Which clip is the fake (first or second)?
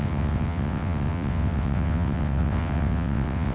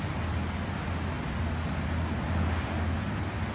first